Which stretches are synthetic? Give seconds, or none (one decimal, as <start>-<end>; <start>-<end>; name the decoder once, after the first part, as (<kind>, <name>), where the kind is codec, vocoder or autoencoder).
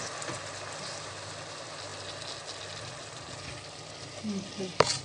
none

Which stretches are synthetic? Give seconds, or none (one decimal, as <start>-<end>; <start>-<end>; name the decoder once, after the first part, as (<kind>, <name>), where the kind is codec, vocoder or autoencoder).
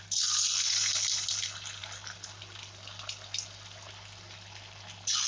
none